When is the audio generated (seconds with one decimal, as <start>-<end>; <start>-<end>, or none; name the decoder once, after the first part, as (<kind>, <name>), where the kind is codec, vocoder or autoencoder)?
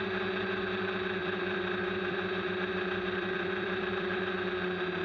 1.2-4.2 (vocoder, BigVGAN v2)